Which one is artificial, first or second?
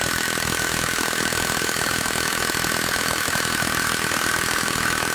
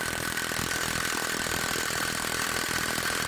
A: first